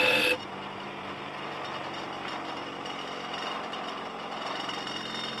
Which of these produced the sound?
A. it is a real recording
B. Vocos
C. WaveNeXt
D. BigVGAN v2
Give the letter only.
A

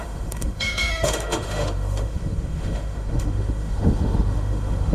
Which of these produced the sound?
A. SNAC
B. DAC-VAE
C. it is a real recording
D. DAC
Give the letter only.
B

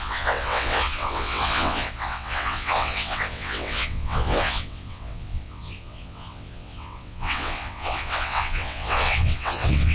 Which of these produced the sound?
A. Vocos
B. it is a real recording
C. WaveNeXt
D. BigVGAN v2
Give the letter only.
C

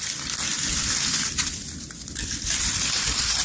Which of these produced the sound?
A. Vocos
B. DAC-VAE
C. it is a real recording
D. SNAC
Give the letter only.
C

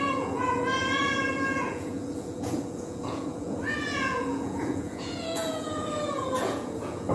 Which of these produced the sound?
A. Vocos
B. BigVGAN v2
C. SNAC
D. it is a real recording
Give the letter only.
A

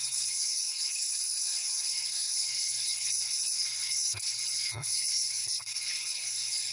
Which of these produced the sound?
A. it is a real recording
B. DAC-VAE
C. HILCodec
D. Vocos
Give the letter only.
C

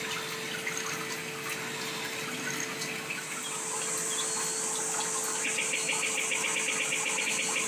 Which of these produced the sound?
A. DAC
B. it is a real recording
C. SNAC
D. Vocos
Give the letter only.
B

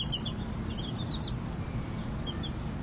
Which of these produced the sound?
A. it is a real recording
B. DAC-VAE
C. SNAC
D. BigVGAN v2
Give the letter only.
A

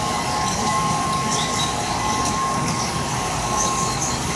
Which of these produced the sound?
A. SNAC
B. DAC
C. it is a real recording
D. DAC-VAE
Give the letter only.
B